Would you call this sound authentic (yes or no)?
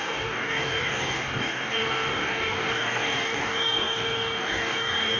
no